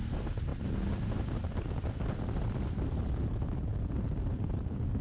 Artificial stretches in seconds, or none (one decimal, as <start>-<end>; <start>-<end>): none